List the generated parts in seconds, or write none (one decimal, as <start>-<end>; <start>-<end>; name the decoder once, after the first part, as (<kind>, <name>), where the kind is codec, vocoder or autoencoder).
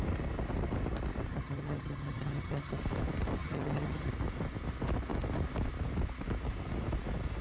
1.3-2.8 (vocoder, HiFi-GAN); 3.4-4.1